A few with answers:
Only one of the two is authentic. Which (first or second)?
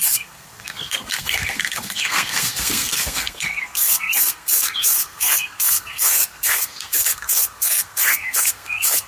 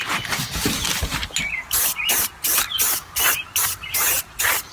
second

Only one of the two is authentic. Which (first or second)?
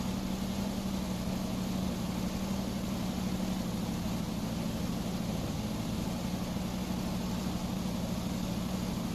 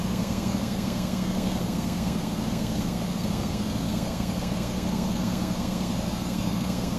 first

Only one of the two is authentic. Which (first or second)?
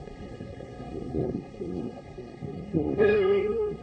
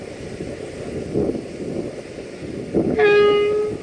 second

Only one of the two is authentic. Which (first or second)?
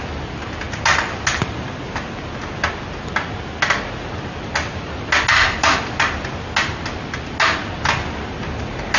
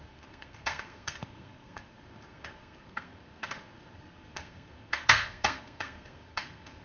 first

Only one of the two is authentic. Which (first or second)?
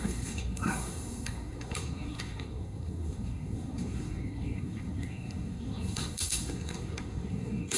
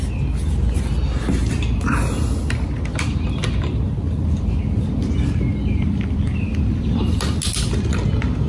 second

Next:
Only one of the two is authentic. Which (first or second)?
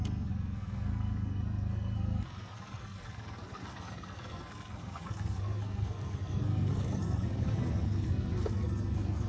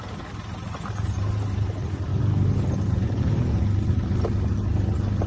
second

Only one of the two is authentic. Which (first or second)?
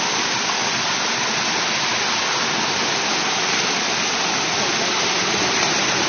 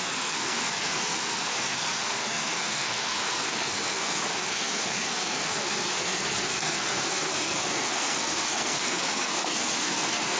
first